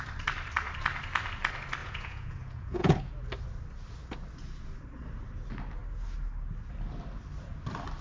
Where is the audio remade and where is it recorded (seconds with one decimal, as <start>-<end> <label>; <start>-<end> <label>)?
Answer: 0.0-1.8 recorded; 1.8-3.1 remade; 3.1-8.0 recorded